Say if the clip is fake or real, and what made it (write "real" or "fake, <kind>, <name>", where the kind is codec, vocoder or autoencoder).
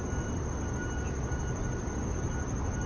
real